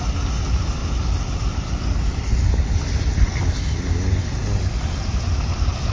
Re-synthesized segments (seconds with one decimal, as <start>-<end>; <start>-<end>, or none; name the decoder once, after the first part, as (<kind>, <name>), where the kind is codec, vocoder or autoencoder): none